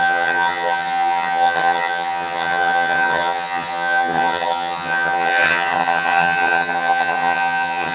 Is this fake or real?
fake